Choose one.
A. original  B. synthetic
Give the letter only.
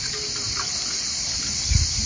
A